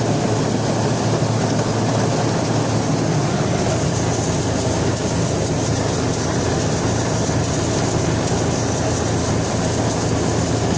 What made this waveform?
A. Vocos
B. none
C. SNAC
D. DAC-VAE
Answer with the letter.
B